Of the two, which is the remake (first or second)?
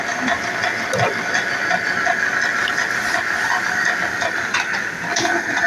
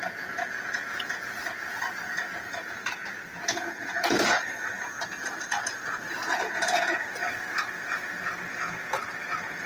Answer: second